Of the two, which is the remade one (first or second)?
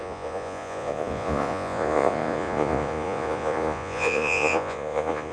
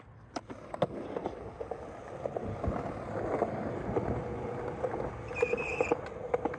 first